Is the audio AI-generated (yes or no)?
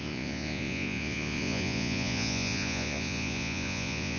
yes